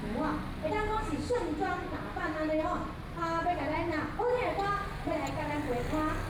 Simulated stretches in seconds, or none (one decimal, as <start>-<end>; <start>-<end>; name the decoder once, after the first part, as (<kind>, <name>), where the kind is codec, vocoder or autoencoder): none